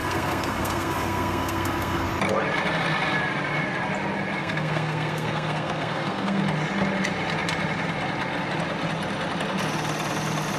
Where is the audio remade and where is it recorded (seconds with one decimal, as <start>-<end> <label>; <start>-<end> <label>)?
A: 0.0-2.1 remade; 2.1-4.4 recorded; 4.4-6.4 remade; 6.4-10.6 recorded